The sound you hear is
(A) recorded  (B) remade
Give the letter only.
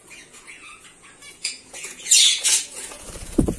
B